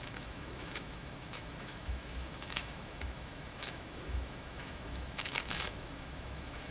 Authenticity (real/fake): fake